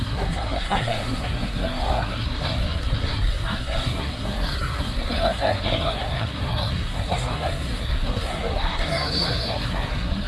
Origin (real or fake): fake